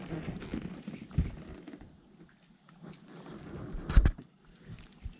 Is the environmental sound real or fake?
real